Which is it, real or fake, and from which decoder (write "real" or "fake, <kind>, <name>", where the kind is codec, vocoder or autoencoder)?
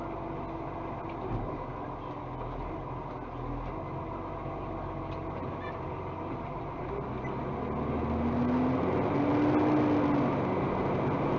real